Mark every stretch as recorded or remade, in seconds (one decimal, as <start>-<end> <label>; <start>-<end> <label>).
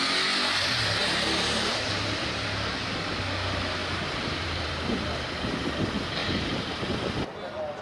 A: 0.0-1.0 recorded; 1.0-3.0 remade; 3.0-3.8 recorded; 3.8-4.7 remade; 4.7-6.2 recorded; 6.2-7.1 remade; 7.1-7.8 recorded